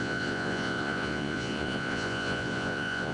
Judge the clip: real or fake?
fake